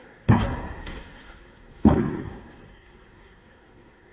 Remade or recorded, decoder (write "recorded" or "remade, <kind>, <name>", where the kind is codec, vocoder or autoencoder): remade, codec, SNAC